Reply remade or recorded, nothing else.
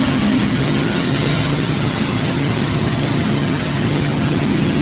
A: remade